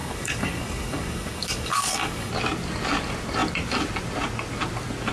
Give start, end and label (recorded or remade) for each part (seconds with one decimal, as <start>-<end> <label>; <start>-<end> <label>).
0.0-2.3 remade; 2.3-5.1 recorded